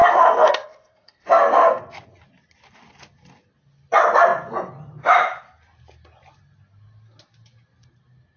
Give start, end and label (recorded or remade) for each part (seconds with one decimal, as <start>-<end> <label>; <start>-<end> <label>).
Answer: 0.0-1.8 remade; 1.8-8.4 recorded